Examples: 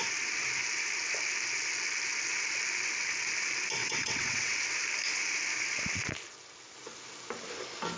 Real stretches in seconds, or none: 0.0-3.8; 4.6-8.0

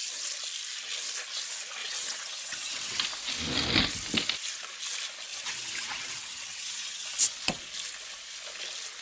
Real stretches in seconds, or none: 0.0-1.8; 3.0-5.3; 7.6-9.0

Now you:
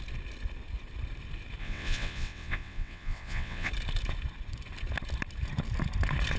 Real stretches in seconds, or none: 0.0-1.6; 3.7-6.4

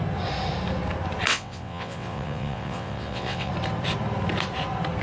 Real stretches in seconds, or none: 0.0-1.3; 3.5-5.0